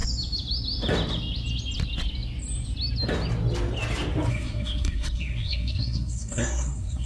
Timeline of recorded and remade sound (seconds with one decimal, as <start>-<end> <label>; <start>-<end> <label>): 0.0-4.3 recorded; 4.3-7.1 remade